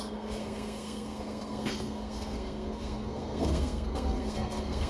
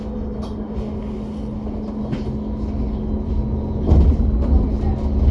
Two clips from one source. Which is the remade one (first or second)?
first